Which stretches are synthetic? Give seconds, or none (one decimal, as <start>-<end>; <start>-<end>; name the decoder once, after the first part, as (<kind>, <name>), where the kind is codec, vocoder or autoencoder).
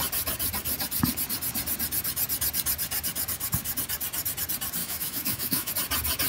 4.8-5.7 (autoencoder, DAC-VAE)